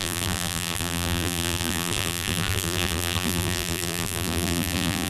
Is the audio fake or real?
fake